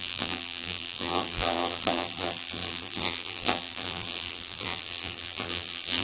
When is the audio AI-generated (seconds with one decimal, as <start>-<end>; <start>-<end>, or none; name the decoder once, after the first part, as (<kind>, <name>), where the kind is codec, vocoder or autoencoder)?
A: 0.0-6.0 (vocoder, BigVGAN v2)